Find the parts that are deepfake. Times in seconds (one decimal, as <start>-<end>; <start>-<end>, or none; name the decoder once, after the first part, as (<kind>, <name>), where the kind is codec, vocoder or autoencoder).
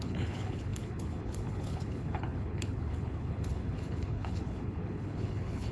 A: 0.0-5.7 (codec, HILCodec)